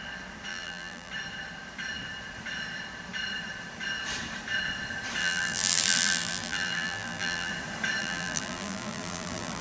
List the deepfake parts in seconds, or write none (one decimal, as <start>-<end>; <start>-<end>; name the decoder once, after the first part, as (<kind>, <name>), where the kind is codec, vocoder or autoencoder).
0.5-1.1 (vocoder, BigVGAN v2); 5.2-7.5; 8.0-9.6